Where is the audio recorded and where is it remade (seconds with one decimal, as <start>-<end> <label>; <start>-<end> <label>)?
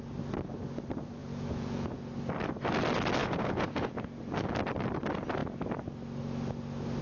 0.0-1.2 recorded; 1.2-2.1 remade; 2.1-3.2 recorded; 3.2-4.2 remade; 4.2-7.0 recorded